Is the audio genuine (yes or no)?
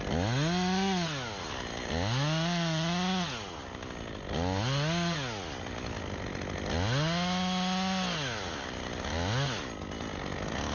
yes